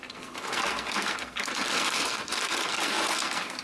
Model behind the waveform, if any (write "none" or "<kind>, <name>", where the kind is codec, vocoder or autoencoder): codec, SNAC